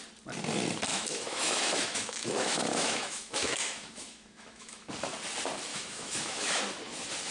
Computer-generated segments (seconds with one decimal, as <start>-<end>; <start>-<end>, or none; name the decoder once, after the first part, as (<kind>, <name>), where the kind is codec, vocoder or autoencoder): 0.9-4.9 (autoencoder, DAC-VAE); 5.7-6.6